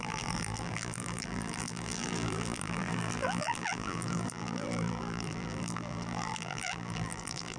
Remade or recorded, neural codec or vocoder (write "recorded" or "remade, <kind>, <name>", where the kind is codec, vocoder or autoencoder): remade, vocoder, BigVGAN v2